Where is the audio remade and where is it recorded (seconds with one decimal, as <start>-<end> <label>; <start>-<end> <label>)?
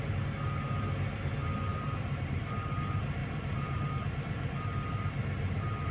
0.0-1.7 recorded; 1.7-2.5 remade; 2.5-3.2 recorded; 3.2-3.9 remade; 3.9-5.9 recorded